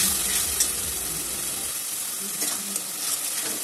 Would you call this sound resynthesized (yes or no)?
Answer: no